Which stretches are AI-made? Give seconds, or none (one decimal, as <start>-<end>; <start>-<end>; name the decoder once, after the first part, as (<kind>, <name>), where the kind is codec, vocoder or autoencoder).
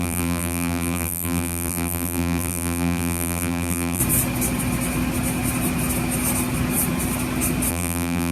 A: 0.0-4.0 (vocoder, BigVGAN v2); 7.7-8.3